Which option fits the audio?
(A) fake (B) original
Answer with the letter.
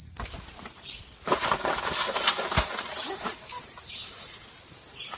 A